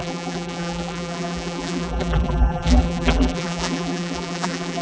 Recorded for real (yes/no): no